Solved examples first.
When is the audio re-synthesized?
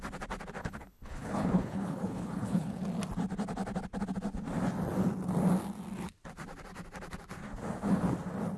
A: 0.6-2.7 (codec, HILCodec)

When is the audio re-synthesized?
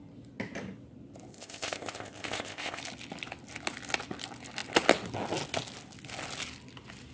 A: 1.3-2.8 (codec, ZipCodec)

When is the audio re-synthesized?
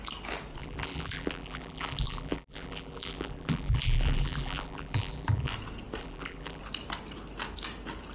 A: 0.6-5.5 (vocoder, BigVGAN v2); 6.0-6.6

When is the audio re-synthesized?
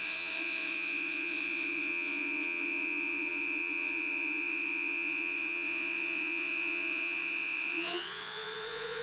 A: 0.0-9.0 (vocoder, Vocos)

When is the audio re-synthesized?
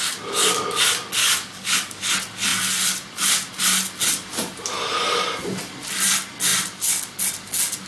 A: 1.2-2.0 (codec, DAC)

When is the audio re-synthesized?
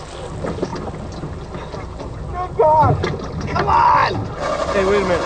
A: none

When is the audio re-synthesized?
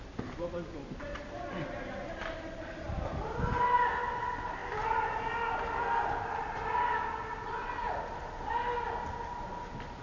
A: none